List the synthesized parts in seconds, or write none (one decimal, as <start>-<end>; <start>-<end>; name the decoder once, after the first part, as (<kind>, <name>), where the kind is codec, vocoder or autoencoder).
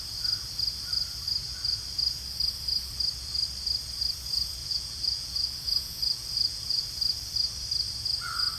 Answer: 4.6-6.9 (vocoder, Vocos)